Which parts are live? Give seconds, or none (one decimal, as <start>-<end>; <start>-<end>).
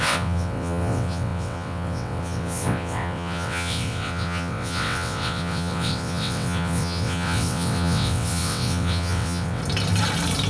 9.6-10.5